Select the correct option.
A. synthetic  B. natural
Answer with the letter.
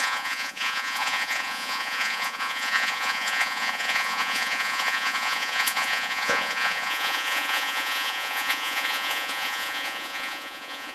A